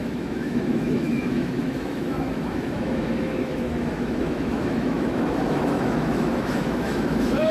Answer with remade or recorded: remade